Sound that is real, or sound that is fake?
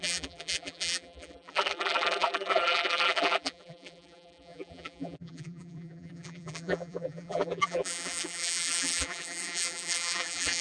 fake